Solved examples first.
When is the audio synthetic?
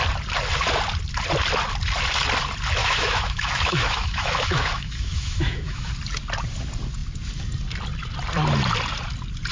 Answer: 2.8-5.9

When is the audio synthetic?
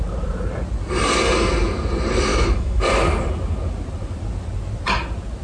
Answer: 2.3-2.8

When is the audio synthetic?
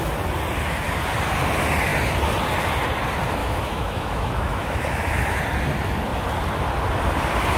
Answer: 3.4-5.4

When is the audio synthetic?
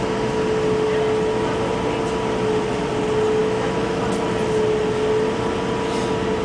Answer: 3.4-4.0